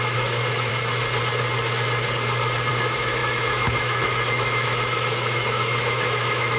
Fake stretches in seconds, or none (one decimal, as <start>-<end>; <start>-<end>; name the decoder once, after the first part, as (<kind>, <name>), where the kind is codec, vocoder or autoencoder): 0.0-0.7 (autoencoder, DAC-VAE); 2.7-6.6